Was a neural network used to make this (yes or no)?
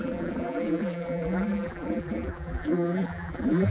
yes